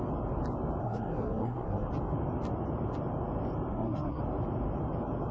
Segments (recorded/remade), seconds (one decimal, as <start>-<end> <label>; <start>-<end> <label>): 0.0-0.8 recorded; 0.8-1.9 remade; 1.9-3.7 recorded; 3.7-4.2 remade; 4.2-5.3 recorded